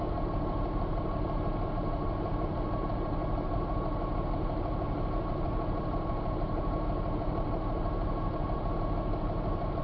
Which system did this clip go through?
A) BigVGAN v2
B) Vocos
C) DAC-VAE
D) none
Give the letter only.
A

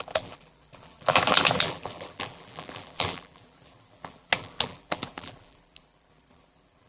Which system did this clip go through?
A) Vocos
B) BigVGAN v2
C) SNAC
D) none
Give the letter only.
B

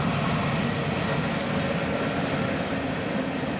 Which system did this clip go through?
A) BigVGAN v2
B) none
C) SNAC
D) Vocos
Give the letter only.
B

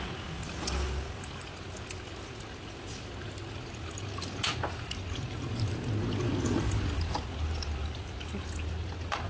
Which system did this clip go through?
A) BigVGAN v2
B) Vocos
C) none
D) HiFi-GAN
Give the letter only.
C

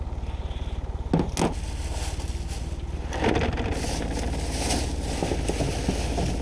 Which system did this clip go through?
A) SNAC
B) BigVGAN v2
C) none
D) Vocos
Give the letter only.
C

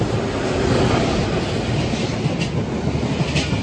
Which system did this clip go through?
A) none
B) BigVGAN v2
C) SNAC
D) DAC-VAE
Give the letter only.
A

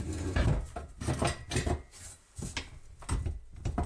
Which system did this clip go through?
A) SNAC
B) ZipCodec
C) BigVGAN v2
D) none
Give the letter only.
D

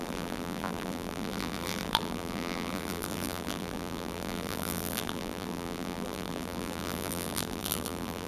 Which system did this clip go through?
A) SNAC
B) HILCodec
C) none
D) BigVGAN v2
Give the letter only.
D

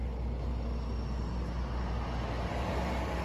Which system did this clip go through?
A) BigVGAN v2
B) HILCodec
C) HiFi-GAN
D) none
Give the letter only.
D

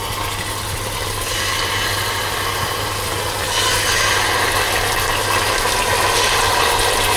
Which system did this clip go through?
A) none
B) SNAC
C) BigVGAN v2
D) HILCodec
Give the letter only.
A